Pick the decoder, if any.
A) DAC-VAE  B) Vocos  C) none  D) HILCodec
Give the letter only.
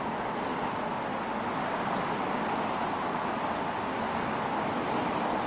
C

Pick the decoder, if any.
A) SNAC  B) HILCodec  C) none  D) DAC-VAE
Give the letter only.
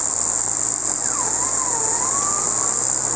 C